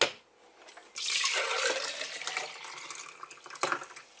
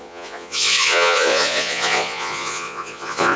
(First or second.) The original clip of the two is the first